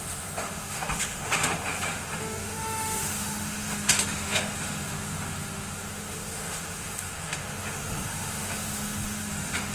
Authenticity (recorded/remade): remade